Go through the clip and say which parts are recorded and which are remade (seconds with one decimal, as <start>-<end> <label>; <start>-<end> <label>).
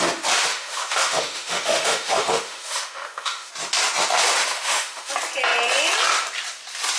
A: 0.0-0.5 recorded; 0.5-3.5 remade; 3.5-4.4 recorded; 4.4-5.1 remade; 5.1-7.0 recorded